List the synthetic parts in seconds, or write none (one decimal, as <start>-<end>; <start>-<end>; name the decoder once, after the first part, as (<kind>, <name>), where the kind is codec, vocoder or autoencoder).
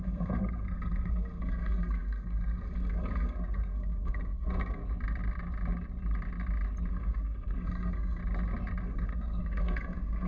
0.0-4.8 (codec, SNAC); 6.9-8.2; 8.8-10.3